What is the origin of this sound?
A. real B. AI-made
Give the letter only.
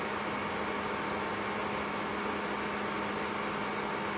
A